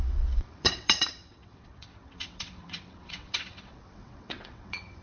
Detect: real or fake fake